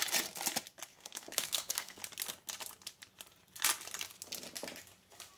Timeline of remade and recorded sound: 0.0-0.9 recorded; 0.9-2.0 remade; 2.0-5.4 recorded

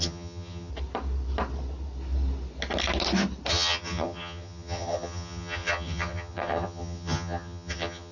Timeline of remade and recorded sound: 0.0-0.7 remade; 0.7-3.5 recorded; 3.5-8.1 remade

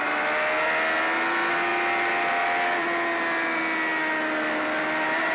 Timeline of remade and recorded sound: 0.0-5.3 recorded